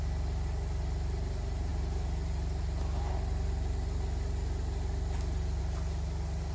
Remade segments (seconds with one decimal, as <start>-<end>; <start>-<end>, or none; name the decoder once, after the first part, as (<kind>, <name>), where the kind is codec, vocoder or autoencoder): none